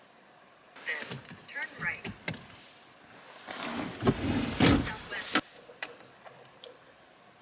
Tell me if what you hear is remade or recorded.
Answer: recorded